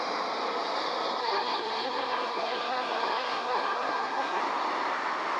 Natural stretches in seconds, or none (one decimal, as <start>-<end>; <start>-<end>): 0.0-1.2; 4.4-5.4